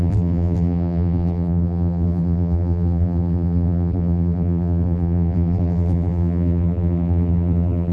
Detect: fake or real fake